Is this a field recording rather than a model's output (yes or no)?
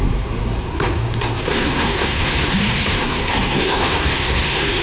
no